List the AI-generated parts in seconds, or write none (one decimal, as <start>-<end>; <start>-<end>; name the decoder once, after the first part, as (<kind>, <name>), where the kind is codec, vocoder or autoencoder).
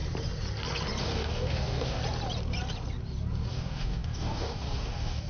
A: 1.0-2.0 (codec, DAC); 3.5-5.3